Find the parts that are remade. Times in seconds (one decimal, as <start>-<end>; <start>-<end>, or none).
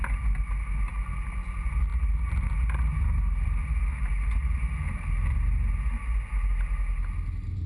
none